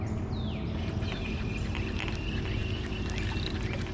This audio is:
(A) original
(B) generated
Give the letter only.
A